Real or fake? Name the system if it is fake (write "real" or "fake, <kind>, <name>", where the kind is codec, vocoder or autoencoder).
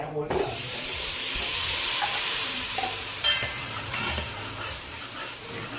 fake, vocoder, BigVGAN v2